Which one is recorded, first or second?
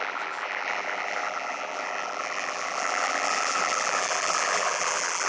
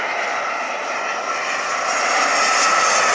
second